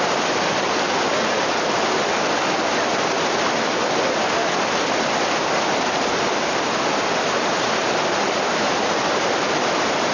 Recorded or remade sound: recorded